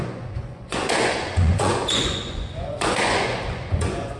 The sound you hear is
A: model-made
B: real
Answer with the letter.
A